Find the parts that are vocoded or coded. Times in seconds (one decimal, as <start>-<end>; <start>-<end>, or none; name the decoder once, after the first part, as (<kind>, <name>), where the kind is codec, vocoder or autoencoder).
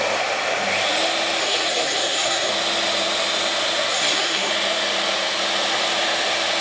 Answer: 1.4-2.5 (codec, SNAC); 3.9-4.5